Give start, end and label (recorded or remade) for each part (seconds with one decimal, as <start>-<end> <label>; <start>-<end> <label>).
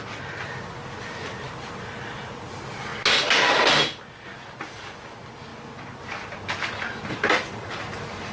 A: 0.0-8.3 recorded